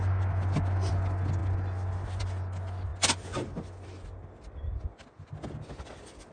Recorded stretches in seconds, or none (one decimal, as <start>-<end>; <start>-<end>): 0.0-6.3